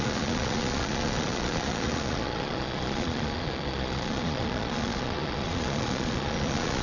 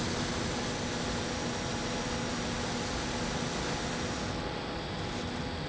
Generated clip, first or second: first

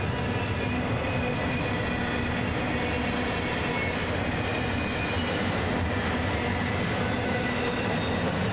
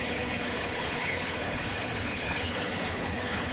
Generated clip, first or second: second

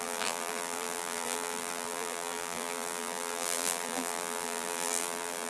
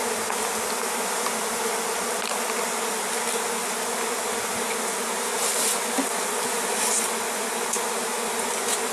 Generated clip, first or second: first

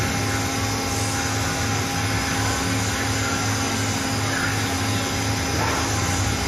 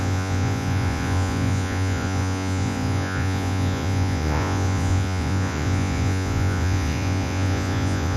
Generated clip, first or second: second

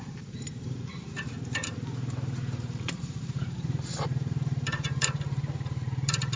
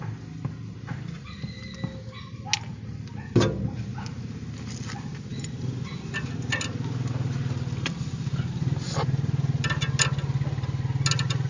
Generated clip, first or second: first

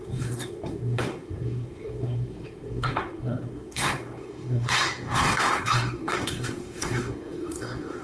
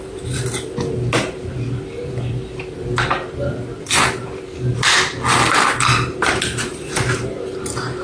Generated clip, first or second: first